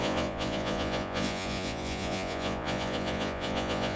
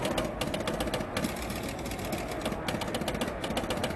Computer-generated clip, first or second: first